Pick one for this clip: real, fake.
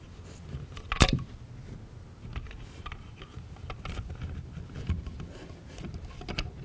real